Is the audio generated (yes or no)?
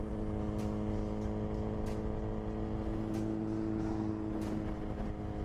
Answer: no